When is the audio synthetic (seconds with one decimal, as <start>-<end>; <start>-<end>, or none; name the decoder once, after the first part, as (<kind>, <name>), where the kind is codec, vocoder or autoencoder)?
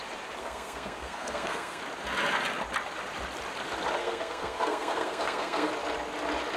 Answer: 0.4-1.8 (codec, SNAC); 4.0-5.7